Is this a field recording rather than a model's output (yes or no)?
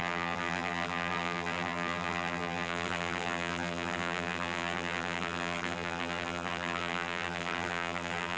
no